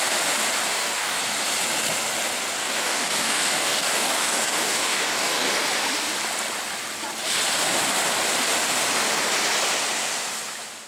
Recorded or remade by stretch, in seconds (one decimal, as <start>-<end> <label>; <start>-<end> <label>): 0.0-0.7 recorded; 0.7-1.2 remade; 1.2-2.6 recorded; 2.6-5.5 remade; 5.5-10.9 recorded